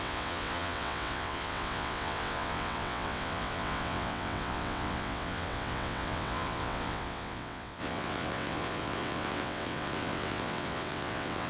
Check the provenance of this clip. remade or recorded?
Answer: remade